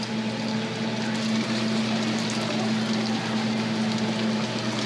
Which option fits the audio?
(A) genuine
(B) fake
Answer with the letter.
A